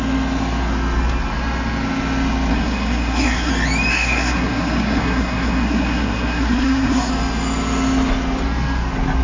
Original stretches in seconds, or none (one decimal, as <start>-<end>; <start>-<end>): 0.0-2.5; 3.5-3.9; 7.1-9.2